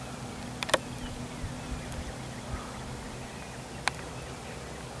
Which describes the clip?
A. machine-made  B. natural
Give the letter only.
B